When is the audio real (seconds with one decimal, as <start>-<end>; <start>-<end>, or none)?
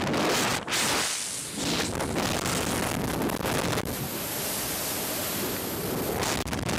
0.0-6.8